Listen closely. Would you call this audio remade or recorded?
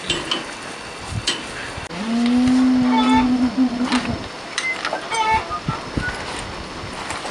recorded